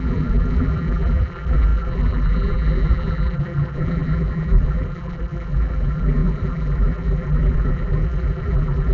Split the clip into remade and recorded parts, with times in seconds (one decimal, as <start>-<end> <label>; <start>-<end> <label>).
0.0-8.9 remade